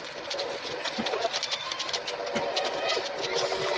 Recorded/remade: recorded